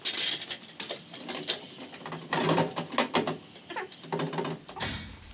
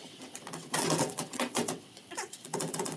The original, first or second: first